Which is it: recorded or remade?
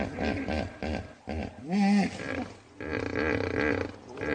recorded